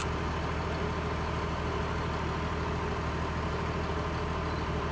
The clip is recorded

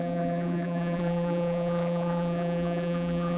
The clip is remade